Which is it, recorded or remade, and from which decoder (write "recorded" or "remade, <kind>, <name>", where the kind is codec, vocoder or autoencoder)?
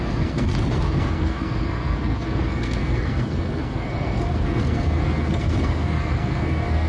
remade, codec, SNAC